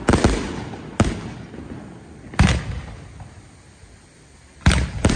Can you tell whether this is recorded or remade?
recorded